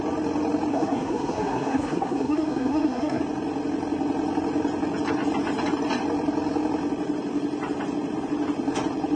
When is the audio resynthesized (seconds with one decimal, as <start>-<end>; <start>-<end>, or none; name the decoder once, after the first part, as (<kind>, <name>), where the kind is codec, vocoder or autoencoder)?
0.7-3.2 (codec, SNAC)